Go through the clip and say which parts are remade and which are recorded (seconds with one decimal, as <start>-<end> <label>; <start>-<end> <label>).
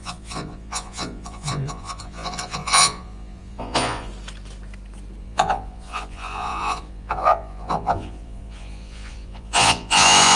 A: 0.0-4.1 remade; 4.1-5.2 recorded; 5.2-10.4 remade